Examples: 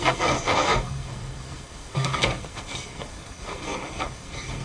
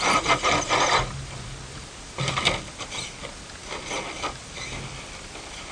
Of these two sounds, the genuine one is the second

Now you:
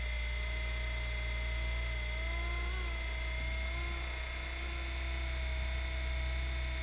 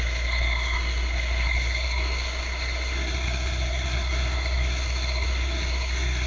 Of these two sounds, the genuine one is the first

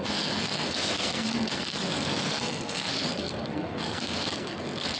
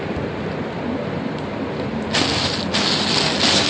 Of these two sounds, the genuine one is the second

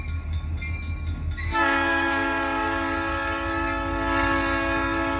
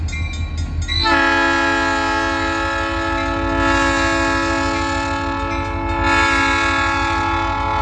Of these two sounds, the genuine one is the second